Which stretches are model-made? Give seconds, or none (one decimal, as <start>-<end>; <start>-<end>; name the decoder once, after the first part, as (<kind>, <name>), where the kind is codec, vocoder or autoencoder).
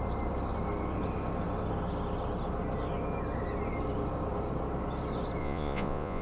5.4-6.2 (vocoder, Vocos)